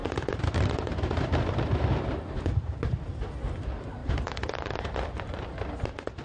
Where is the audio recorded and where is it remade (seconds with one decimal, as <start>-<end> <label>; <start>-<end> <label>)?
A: 0.0-3.2 remade; 3.2-4.0 recorded; 4.0-5.6 remade; 5.6-6.2 recorded